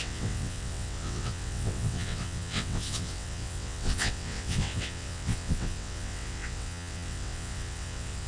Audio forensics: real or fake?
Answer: fake